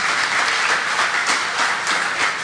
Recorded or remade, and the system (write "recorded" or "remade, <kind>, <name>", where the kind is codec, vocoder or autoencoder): recorded